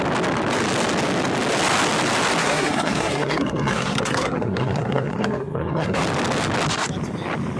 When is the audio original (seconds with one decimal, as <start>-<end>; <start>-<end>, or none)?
0.0-2.4; 6.0-7.6